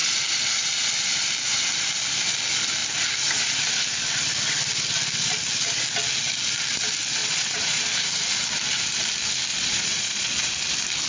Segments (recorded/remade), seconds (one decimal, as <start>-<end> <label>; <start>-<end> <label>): 0.0-7.2 recorded; 7.2-7.8 remade; 7.8-9.5 recorded; 9.5-10.5 remade; 10.5-11.1 recorded